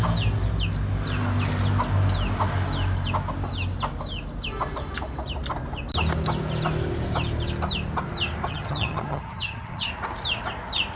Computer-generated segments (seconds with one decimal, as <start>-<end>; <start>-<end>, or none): 8.5-9.9